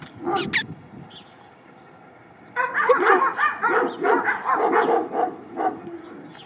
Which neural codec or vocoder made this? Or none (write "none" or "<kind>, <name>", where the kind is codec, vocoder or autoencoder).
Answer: none